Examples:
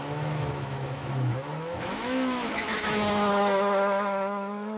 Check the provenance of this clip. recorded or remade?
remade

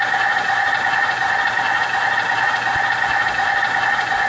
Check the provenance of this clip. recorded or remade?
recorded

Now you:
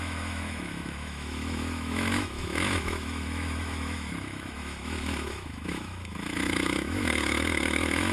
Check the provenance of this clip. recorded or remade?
remade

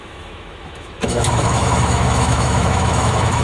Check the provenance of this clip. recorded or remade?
remade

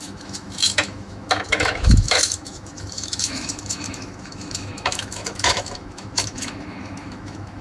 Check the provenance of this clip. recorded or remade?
remade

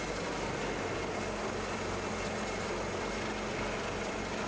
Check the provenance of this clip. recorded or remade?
recorded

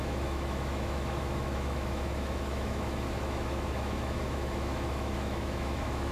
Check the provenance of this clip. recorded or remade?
remade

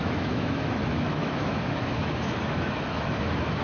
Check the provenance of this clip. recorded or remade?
remade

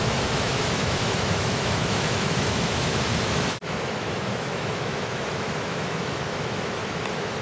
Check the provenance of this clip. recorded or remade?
remade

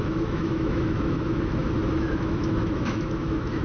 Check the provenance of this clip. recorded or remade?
remade